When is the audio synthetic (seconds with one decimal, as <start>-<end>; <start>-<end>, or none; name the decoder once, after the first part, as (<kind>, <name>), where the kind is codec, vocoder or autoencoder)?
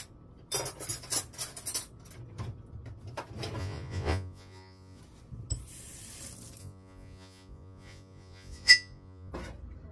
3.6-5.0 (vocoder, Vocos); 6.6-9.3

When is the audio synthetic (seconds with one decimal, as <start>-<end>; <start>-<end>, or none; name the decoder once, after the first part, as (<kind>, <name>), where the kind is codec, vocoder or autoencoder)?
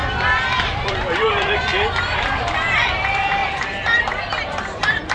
0.7-5.1 (vocoder, BigVGAN v2)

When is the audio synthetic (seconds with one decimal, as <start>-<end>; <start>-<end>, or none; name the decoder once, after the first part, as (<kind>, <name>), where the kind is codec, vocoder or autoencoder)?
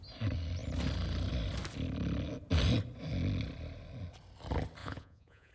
4.8-5.5 (vocoder, Vocos)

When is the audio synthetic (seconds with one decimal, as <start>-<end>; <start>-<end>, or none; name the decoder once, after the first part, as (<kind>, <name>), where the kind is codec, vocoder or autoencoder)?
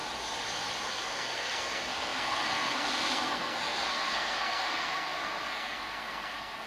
0.9-6.7 (codec, SNAC)